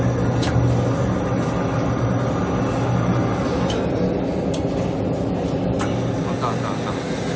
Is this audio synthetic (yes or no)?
no